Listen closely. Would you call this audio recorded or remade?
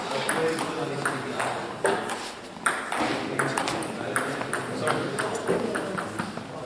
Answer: recorded